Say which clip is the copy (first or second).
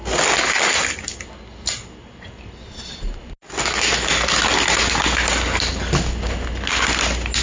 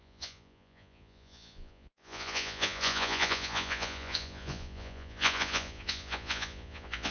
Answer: second